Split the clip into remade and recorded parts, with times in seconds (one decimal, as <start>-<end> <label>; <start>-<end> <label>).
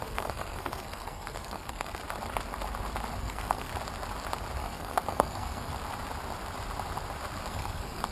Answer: 0.0-2.0 remade; 2.0-3.2 recorded; 3.2-3.7 remade; 3.7-4.6 recorded; 4.6-5.7 remade; 5.7-7.5 recorded; 7.5-8.1 remade